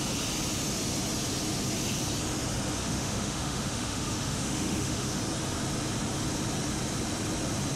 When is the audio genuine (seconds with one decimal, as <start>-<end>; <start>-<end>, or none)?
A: 0.0-2.8; 5.2-7.8